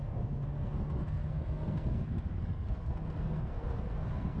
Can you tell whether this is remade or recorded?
remade